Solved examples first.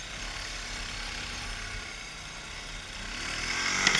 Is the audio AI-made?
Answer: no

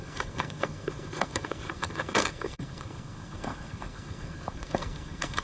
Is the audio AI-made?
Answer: yes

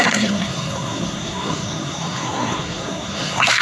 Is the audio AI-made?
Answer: yes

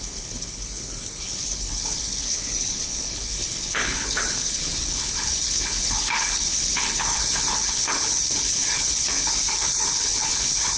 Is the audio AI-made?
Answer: yes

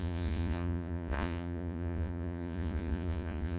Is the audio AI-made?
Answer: yes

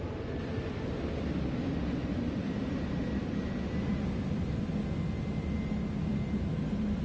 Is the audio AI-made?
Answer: no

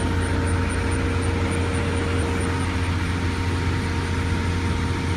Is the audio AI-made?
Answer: no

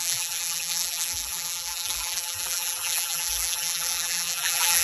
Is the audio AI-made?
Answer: yes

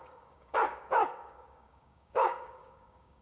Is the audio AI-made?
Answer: yes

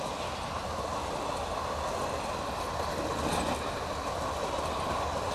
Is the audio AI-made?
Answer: no